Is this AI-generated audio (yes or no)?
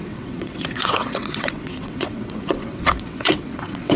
yes